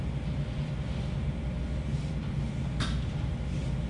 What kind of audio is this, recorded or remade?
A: recorded